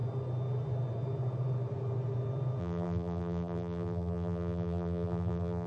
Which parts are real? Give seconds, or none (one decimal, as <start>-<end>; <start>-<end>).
0.0-2.6